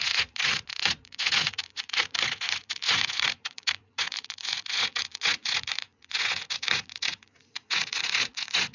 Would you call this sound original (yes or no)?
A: no